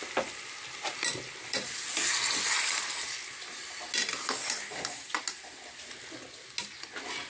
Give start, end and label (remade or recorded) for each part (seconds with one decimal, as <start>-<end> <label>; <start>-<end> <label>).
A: 0.0-7.3 recorded